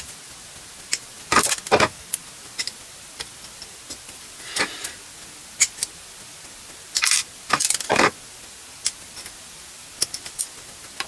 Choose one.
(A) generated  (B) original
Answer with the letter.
B